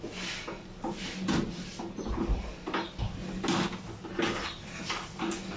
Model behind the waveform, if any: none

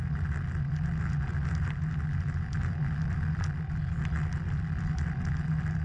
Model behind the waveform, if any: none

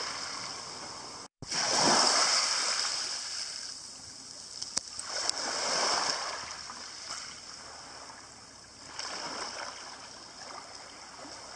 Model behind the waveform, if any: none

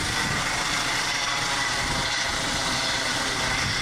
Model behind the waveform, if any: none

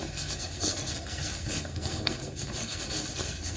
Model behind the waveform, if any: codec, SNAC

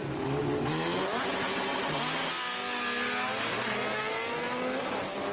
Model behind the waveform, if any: none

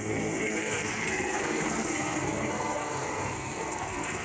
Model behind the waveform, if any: codec, SNAC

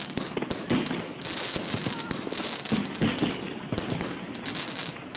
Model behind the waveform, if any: none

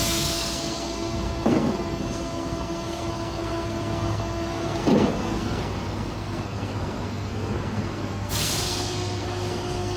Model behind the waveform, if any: codec, SNAC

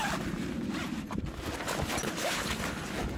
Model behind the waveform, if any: none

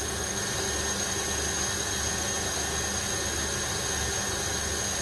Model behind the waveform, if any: none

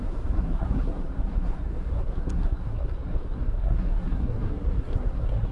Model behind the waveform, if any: codec, SNAC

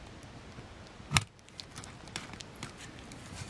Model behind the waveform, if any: none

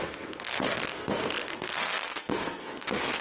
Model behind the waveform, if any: codec, SNAC